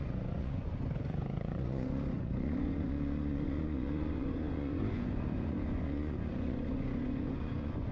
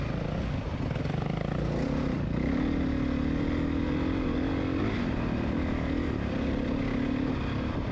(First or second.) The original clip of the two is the second